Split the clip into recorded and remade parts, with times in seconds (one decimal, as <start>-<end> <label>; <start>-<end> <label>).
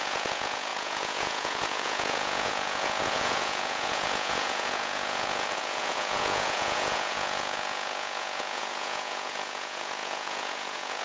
0.0-11.0 remade